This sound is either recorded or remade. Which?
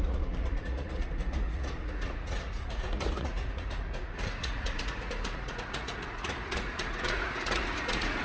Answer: remade